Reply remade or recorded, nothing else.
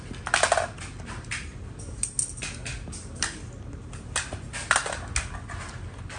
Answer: recorded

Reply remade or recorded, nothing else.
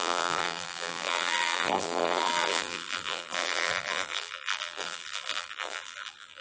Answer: remade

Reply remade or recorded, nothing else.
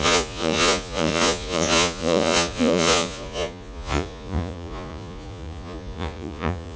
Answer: remade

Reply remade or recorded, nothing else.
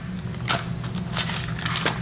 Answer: recorded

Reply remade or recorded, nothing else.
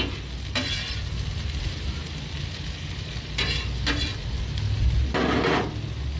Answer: recorded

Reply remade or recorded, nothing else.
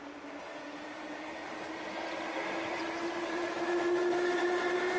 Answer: recorded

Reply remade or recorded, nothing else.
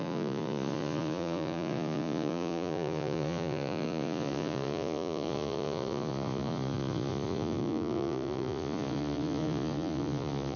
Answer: remade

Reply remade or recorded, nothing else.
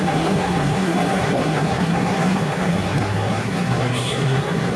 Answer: remade